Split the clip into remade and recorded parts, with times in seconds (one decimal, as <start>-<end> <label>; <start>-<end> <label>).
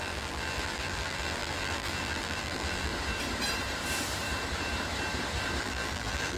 0.0-2.9 remade; 2.9-5.6 recorded; 5.6-6.4 remade